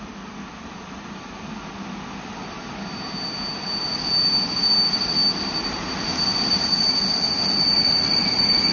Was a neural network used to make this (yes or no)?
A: no